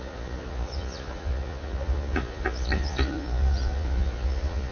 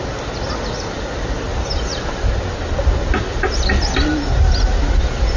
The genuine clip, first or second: second